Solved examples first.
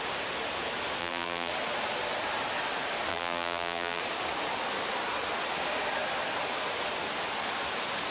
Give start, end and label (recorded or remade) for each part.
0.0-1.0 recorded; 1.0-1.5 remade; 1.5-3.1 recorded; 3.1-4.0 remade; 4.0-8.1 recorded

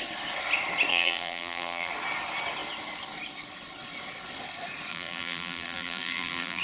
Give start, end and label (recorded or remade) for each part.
0.0-0.9 recorded; 0.9-1.9 remade; 1.9-4.9 recorded; 4.9-6.6 remade

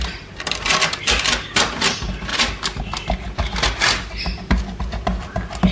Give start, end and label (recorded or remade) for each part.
0.0-5.7 recorded

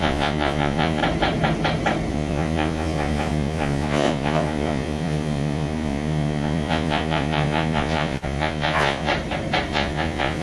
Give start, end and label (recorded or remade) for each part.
0.0-1.0 remade; 1.0-2.1 recorded; 2.1-9.1 remade; 9.1-9.7 recorded; 9.7-10.4 remade